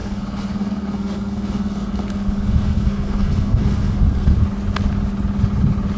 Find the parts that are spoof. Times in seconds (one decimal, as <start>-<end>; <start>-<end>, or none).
0.0-4.4